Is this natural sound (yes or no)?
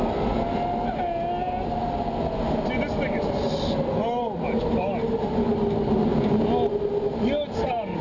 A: yes